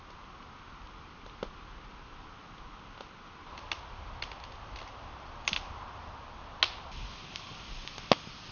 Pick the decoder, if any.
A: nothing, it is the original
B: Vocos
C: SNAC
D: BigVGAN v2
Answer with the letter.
A